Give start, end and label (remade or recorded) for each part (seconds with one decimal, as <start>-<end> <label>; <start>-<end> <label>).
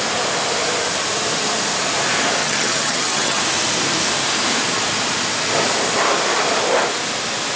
0.0-2.4 recorded; 2.4-3.4 remade; 3.4-7.6 recorded